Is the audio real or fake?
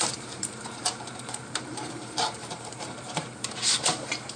fake